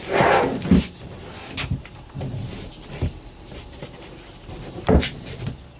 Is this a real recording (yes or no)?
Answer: yes